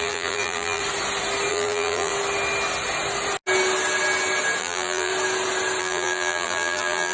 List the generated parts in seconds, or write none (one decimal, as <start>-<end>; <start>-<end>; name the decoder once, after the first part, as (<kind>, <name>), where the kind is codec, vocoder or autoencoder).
0.0-0.8 (vocoder, BigVGAN v2); 1.5-2.1; 4.6-5.1; 5.8-7.1